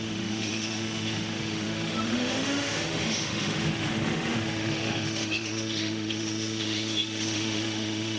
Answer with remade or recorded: remade